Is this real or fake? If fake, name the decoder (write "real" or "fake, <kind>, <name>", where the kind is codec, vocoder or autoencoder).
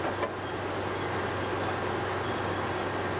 real